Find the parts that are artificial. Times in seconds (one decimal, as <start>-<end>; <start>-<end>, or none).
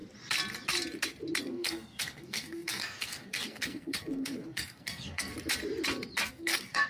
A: 1.4-5.3; 6.3-6.9